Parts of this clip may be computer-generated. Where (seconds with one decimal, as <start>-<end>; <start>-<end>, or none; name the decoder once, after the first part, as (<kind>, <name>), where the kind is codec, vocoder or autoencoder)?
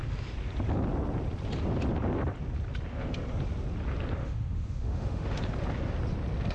4.2-5.4 (autoencoder, DAC-VAE)